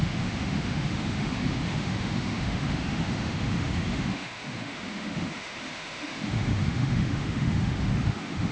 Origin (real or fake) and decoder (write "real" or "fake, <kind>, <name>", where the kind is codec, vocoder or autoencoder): fake, autoencoder, DAC-VAE